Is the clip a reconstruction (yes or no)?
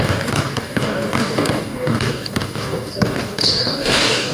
yes